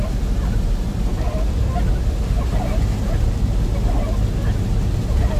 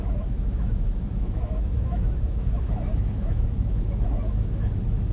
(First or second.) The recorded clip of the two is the first